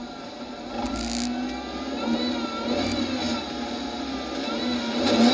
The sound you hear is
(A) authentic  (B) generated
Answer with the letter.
A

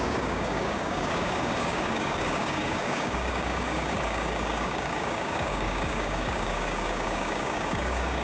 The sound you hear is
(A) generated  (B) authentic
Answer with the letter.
A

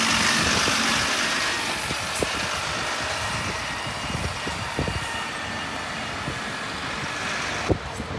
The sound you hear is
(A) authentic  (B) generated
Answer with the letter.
A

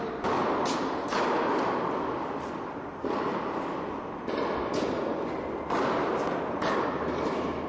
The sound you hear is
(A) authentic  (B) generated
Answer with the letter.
A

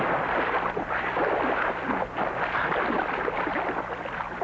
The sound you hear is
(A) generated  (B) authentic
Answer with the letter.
B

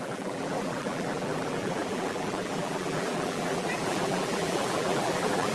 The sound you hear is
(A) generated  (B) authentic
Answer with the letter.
A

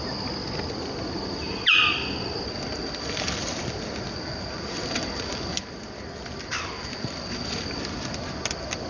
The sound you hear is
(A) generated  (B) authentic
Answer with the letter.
B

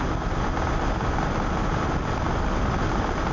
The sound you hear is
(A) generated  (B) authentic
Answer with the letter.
B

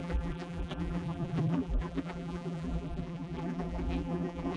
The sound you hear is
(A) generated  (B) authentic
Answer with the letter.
A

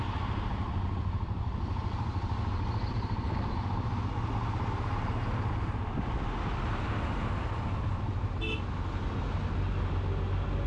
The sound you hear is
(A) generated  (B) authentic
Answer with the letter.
B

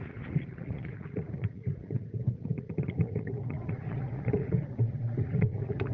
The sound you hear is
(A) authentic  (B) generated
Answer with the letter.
B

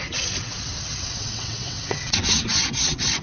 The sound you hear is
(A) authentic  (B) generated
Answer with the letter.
B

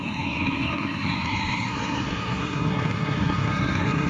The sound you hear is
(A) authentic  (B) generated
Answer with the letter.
B